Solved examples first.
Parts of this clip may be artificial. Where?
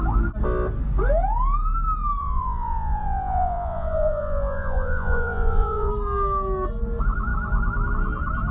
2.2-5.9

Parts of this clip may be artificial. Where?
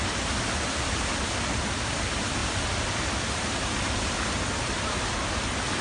none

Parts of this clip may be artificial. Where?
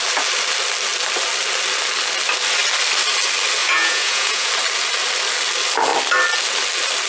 3.6-4.5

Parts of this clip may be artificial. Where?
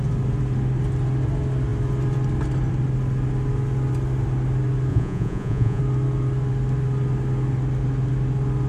4.9-5.8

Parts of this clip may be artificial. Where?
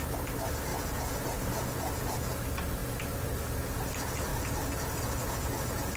0.7-2.3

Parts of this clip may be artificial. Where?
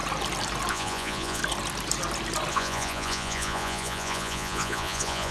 0.7-1.4; 2.5-5.3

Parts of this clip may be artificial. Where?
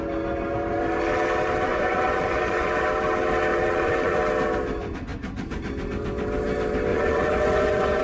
1.7-2.8; 3.5-4.2; 6.9-8.0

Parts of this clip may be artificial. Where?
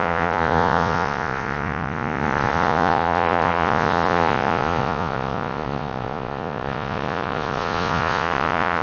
0.0-8.8